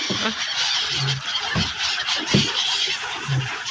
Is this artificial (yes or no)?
no